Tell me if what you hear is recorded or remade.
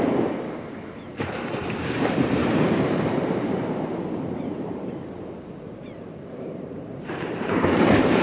remade